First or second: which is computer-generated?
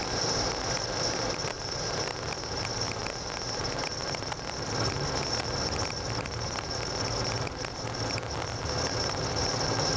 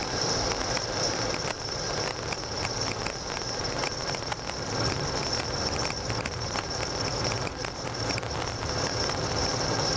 second